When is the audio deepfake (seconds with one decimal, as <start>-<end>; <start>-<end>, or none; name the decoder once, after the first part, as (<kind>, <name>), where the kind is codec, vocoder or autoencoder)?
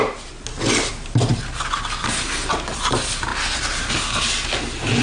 none